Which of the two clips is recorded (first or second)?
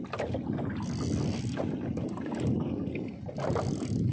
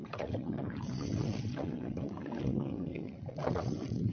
first